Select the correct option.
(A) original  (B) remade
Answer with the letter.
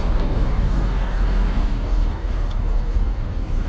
B